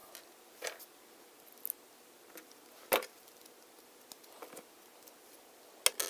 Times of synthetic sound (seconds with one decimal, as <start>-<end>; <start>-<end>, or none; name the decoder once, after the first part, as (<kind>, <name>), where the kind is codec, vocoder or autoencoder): none